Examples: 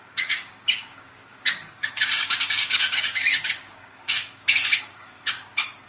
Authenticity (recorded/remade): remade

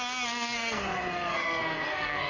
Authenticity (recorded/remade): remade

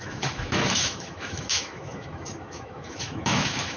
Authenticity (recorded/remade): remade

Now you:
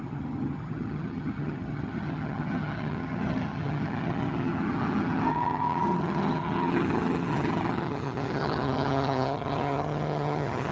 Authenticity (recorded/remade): remade